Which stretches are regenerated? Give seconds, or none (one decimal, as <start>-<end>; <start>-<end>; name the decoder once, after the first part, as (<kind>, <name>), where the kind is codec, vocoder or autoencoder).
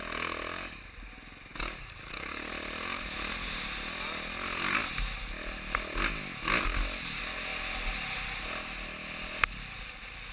1.5-2.5 (codec, DAC)